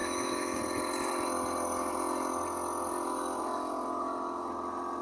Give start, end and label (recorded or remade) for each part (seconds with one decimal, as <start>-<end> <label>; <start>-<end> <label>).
0.0-0.6 remade; 0.6-5.0 recorded